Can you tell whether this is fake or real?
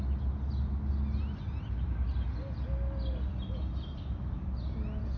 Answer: real